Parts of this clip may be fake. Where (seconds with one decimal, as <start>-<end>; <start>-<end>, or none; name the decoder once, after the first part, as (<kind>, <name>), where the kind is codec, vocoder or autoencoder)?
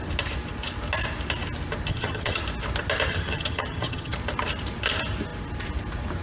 1.9-2.4 (vocoder, HiFi-GAN); 3.1-4.1